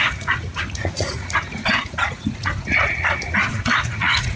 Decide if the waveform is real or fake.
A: fake